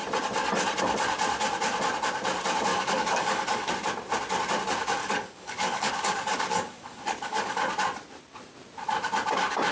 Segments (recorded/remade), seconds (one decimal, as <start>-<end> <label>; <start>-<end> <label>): 0.0-2.7 recorded; 2.7-3.7 remade; 3.7-5.0 recorded; 5.0-7.6 remade; 7.6-9.7 recorded